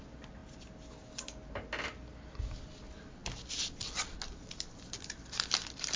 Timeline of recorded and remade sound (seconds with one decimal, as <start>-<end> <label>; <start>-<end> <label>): 0.0-6.0 recorded